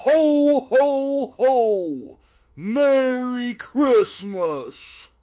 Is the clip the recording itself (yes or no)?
no